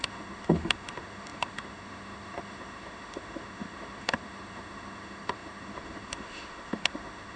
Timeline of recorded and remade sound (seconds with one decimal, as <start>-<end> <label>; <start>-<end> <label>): 0.0-7.4 remade